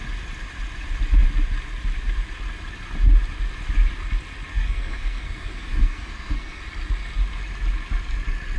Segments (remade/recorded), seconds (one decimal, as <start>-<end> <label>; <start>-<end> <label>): 0.0-4.5 recorded; 4.5-6.6 remade; 6.6-8.6 recorded